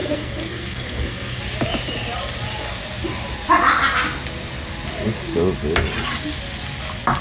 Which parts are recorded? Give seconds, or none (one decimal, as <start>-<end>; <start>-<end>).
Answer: 1.4-7.2